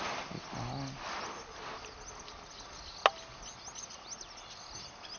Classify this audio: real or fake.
real